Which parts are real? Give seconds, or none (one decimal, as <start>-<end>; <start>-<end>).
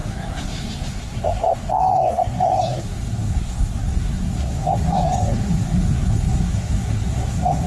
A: none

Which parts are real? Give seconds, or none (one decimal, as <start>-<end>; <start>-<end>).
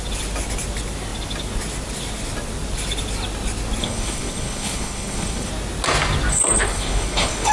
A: 0.0-3.8; 5.5-6.3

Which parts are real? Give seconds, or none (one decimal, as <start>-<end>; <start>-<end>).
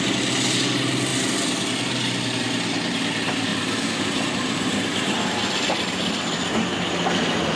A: 0.0-3.5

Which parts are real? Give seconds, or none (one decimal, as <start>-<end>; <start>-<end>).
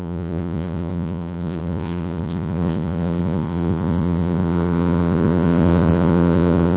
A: none